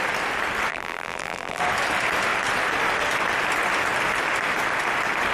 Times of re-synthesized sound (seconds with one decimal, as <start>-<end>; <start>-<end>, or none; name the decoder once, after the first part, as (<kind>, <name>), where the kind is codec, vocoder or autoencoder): 0.7-1.6 (vocoder, BigVGAN v2)